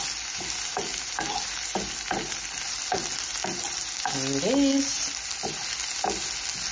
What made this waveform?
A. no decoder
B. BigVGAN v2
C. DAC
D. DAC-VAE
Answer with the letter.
A